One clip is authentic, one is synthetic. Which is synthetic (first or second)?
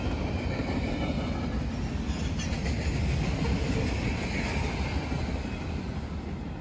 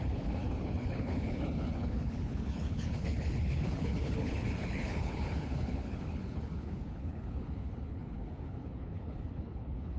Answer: second